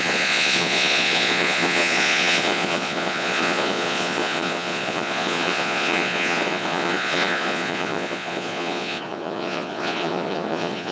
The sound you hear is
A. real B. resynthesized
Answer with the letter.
B